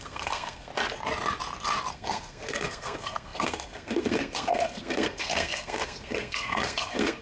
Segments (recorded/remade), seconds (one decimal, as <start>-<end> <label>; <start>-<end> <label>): 0.0-0.7 remade; 0.7-1.9 recorded; 1.9-7.2 remade